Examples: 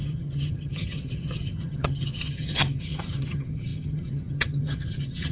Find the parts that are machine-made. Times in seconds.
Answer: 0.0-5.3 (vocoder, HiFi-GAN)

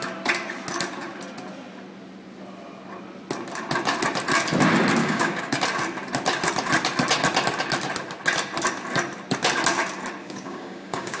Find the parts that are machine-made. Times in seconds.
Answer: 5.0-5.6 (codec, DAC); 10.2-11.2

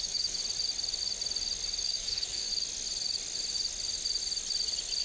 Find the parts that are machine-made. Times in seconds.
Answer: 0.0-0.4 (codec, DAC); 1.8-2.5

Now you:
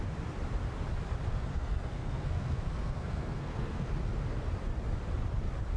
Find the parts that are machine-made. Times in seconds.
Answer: 1.3-3.9 (codec, SNAC)

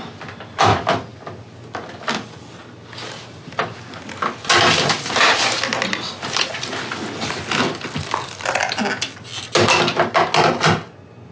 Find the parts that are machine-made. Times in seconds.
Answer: none

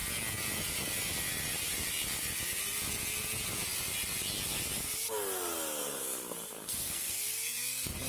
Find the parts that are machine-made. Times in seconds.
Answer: 5.8-8.1 (codec, SNAC)

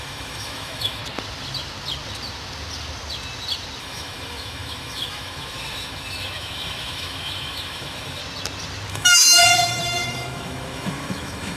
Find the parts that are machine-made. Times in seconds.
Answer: 0.0-1.0 (autoencoder, DAC-VAE); 3.8-8.2; 8.9-11.6